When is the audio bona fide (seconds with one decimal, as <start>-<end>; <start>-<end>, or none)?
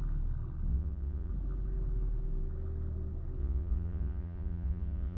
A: 0.0-0.7; 1.3-3.4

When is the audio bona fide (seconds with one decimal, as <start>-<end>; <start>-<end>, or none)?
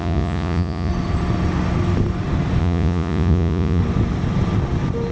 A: 0.9-2.6; 3.8-5.1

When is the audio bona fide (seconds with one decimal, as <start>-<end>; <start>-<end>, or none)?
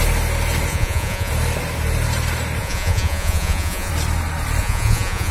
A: 0.0-0.7; 1.3-2.6; 3.9-4.6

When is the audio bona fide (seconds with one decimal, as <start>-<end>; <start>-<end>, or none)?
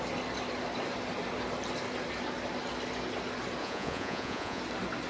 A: 0.0-3.6; 4.6-5.1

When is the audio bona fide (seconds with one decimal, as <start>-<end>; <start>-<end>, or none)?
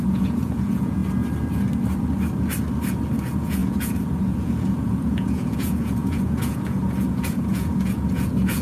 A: 1.0-3.2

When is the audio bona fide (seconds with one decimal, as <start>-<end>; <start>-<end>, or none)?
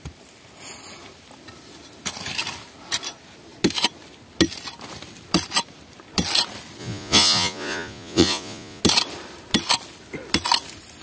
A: 0.0-6.8; 8.8-11.0